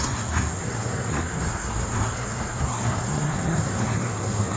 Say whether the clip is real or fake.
fake